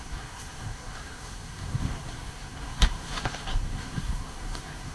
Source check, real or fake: fake